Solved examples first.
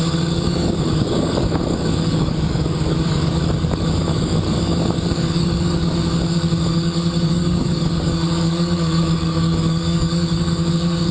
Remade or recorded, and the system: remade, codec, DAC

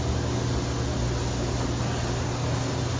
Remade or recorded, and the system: recorded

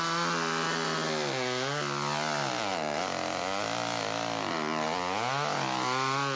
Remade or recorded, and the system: recorded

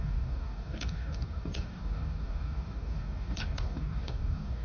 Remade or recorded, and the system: remade, codec, DAC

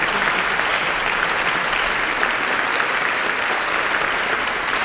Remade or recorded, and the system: recorded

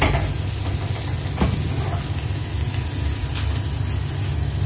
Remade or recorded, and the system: recorded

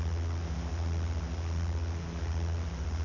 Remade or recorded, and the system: recorded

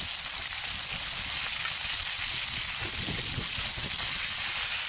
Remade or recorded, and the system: recorded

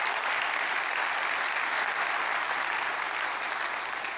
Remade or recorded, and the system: recorded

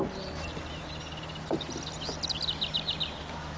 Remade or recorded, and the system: recorded